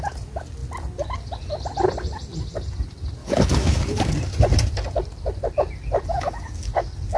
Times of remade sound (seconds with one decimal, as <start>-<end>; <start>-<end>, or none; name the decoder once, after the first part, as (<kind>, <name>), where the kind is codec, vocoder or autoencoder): 3.2-4.1 (codec, DAC); 6.1-6.6